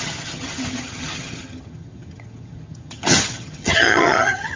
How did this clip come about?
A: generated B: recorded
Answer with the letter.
A